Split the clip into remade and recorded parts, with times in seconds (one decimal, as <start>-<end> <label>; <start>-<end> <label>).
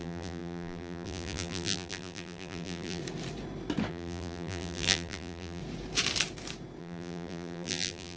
0.0-3.0 remade; 3.0-3.9 recorded; 3.9-5.6 remade; 5.6-6.8 recorded; 6.8-8.2 remade